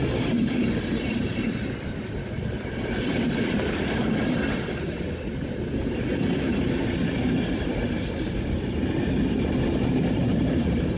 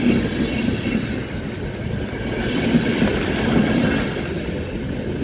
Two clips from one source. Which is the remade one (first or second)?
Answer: first